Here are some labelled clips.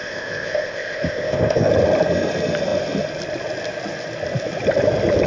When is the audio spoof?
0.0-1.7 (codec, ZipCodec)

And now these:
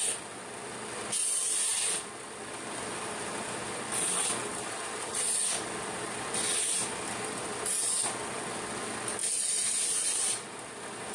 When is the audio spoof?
none

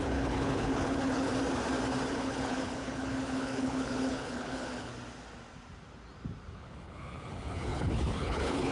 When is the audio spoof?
0.0-1.3 (codec, HILCodec); 2.1-4.9; 6.5-8.7

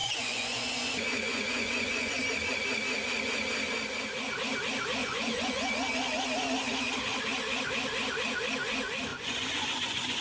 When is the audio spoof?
0.0-2.1 (vocoder, Vocos); 5.0-5.7; 9.1-10.2